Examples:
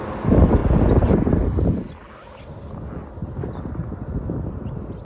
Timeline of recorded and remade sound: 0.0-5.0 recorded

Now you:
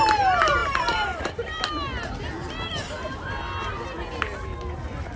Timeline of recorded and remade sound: 0.0-0.6 recorded; 0.6-1.7 remade; 1.7-2.4 recorded; 2.4-3.7 remade; 3.7-5.2 recorded

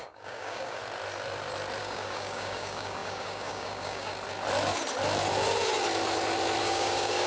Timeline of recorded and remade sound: 0.0-0.8 remade; 0.8-1.8 recorded; 1.8-4.1 remade; 4.1-6.6 recorded; 6.6-7.3 remade